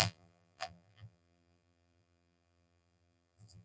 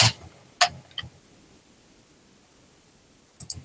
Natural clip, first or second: second